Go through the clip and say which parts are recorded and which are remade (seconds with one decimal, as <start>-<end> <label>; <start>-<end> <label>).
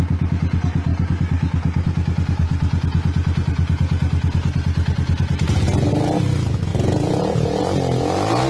0.0-6.7 recorded; 6.7-7.6 remade; 7.6-8.5 recorded